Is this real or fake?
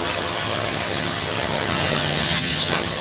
fake